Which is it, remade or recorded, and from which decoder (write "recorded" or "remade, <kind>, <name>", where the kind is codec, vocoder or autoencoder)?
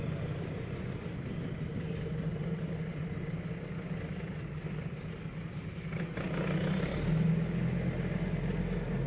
recorded